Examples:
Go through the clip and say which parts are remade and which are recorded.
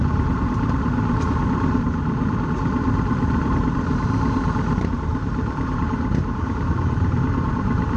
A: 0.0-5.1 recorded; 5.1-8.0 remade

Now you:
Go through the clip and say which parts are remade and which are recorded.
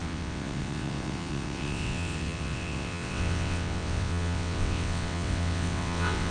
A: 0.0-6.3 remade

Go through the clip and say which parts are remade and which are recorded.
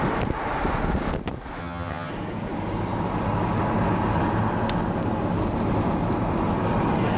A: 0.0-1.6 recorded; 1.6-2.1 remade; 2.1-7.2 recorded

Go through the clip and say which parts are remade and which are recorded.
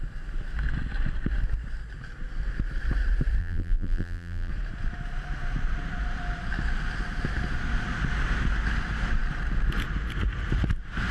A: 0.0-3.4 recorded; 3.4-4.5 remade; 4.5-11.1 recorded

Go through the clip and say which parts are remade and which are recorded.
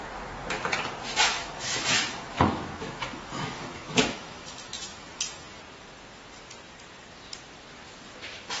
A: 0.0-1.3 recorded; 1.3-5.6 remade; 5.6-8.6 recorded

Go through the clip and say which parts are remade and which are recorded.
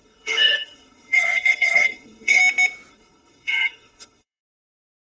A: 0.0-2.4 remade; 2.4-2.9 recorded; 2.9-4.4 remade; 4.4-5.1 recorded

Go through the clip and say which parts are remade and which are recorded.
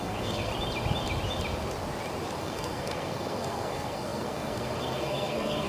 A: 0.0-0.5 remade; 0.5-2.4 recorded; 2.4-5.7 remade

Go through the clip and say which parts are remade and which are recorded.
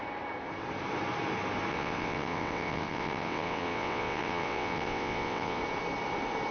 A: 0.0-1.7 recorded; 1.7-5.6 remade; 5.6-6.5 recorded